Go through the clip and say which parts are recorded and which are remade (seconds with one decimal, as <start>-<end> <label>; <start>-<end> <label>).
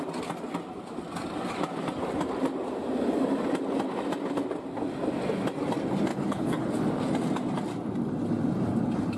0.0-6.1 recorded; 6.1-6.7 remade; 6.7-9.2 recorded